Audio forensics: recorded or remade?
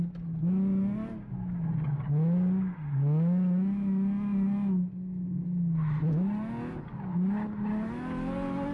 recorded